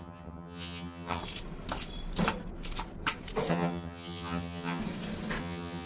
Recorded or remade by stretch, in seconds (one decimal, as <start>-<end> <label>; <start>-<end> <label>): 0.0-1.2 remade; 1.2-3.5 recorded; 3.5-4.8 remade; 4.8-5.4 recorded; 5.4-5.9 remade

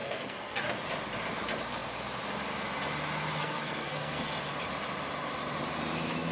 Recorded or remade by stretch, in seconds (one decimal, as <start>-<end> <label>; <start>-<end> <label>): 0.0-0.7 remade; 0.7-3.4 recorded; 3.4-4.3 remade; 4.3-6.3 recorded

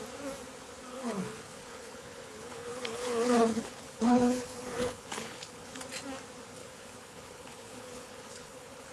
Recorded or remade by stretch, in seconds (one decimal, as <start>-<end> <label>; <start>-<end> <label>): 0.0-0.9 recorded; 0.9-5.8 remade; 5.8-6.6 recorded; 6.6-8.9 remade

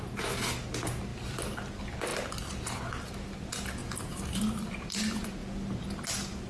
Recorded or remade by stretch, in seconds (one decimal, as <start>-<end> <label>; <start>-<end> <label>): 0.0-1.1 recorded; 1.1-1.7 remade; 1.7-2.1 recorded; 2.1-2.9 remade; 2.9-3.8 recorded; 3.8-4.4 remade; 4.4-6.5 recorded

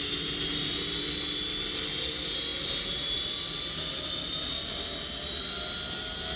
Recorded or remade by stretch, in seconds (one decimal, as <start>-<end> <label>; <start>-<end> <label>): 0.0-6.4 recorded